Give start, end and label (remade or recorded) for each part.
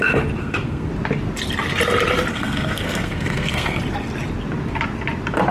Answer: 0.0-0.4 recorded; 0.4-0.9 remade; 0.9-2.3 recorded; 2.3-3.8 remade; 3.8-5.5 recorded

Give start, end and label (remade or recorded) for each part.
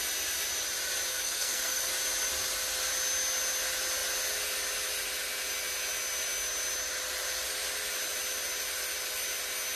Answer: 0.0-1.1 recorded; 1.1-1.9 remade; 1.9-9.8 recorded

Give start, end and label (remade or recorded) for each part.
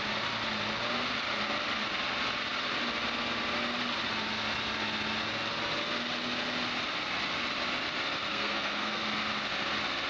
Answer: 0.0-8.3 recorded; 8.3-9.0 remade; 9.0-10.1 recorded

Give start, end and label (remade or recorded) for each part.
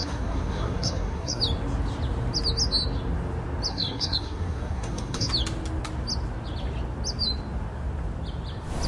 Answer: 0.0-1.4 remade; 1.4-3.7 recorded; 3.7-5.3 remade; 5.3-8.9 recorded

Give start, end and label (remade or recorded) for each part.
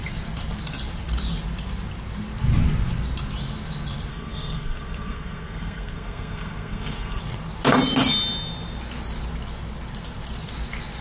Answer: 0.0-4.1 recorded; 4.1-7.2 remade; 7.2-11.0 recorded